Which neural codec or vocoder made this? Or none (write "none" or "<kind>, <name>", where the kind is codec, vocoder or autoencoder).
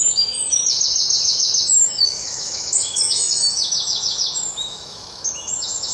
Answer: autoencoder, DAC-VAE